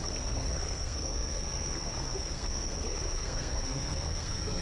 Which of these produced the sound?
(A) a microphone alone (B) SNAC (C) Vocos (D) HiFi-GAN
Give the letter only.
B